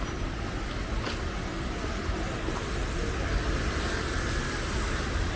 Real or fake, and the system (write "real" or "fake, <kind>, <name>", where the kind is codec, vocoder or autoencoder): real